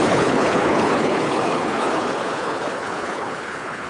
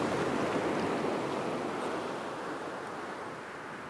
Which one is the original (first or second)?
second